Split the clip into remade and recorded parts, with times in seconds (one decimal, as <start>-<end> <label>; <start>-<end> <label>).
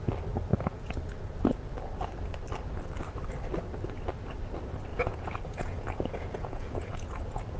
0.0-0.5 recorded; 0.5-1.0 remade; 1.0-4.9 recorded; 4.9-7.6 remade